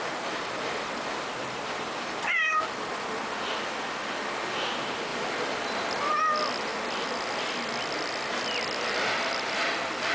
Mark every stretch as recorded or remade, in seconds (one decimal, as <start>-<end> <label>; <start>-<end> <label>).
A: 0.0-10.1 recorded